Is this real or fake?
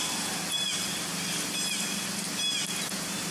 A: real